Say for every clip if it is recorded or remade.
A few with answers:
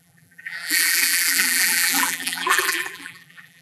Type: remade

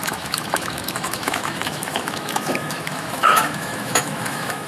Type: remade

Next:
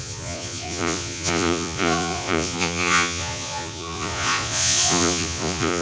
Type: remade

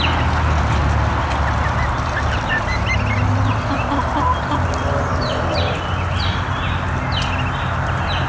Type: recorded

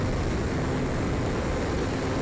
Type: recorded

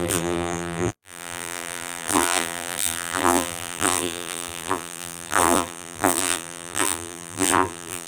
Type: remade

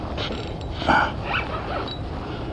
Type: recorded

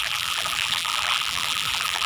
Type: remade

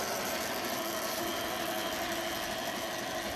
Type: recorded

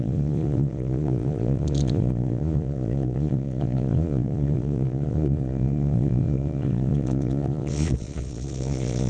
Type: remade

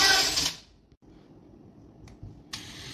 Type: recorded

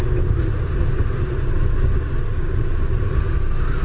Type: recorded